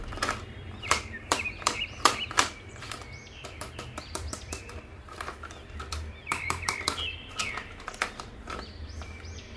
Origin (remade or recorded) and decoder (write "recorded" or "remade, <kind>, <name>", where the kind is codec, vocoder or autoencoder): remade, vocoder, BigVGAN v2